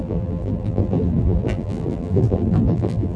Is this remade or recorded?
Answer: remade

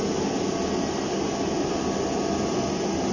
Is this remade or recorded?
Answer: recorded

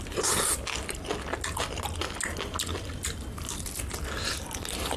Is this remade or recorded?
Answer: recorded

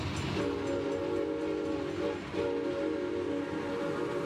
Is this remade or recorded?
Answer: recorded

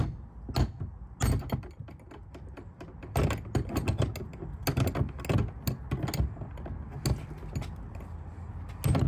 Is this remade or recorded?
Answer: recorded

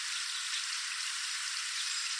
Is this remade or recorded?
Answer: remade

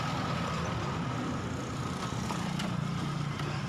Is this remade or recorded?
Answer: recorded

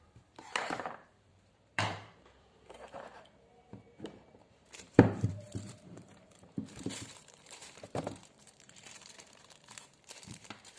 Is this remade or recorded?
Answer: remade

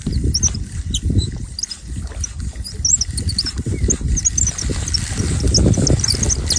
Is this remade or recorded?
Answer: recorded